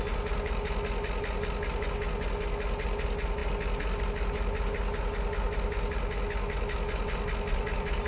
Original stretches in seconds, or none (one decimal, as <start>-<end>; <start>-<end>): 0.0-8.1